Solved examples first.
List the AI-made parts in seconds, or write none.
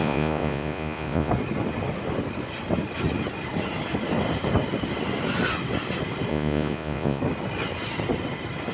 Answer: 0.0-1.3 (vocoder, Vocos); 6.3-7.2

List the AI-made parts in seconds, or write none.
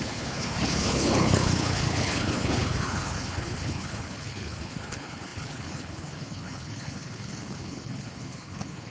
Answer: 0.0-8.9 (codec, HILCodec)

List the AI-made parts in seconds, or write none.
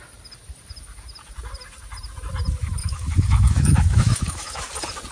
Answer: 2.8-4.6 (autoencoder, DAC-VAE)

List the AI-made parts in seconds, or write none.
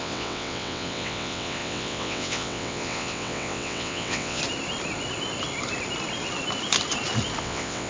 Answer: 0.0-4.4 (vocoder, WaveNeXt); 7.4-7.9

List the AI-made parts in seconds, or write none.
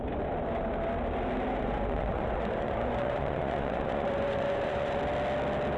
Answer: 1.5-5.0 (vocoder, Vocos)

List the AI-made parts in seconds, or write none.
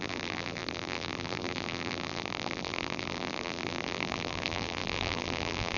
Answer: 0.0-5.8 (vocoder, BigVGAN v2)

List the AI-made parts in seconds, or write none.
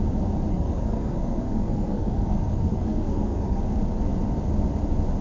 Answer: 0.5-3.6 (codec, SNAC)